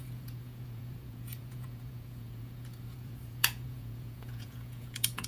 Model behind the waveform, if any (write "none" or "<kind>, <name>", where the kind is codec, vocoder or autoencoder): vocoder, Vocos